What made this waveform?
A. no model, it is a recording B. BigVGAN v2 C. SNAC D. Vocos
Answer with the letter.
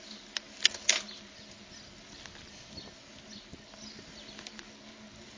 A